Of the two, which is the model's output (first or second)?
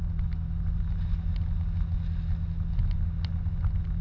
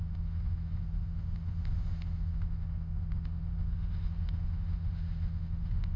second